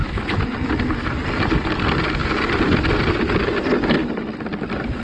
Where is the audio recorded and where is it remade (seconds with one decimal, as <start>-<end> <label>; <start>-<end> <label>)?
0.0-1.4 remade; 1.4-2.2 recorded; 2.2-2.8 remade; 2.8-4.0 recorded; 4.0-5.0 remade